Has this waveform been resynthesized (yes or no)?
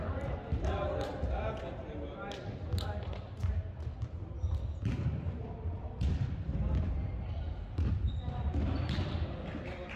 no